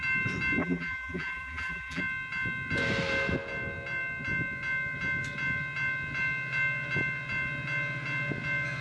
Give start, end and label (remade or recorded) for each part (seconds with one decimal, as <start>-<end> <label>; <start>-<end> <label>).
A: 0.0-0.6 recorded; 0.6-2.0 remade; 2.0-8.8 recorded